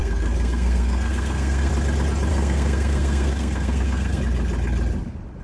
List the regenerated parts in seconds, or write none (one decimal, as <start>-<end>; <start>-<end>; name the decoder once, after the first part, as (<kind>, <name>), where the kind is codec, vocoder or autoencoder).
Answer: 0.0-1.7 (codec, SNAC); 2.3-4.2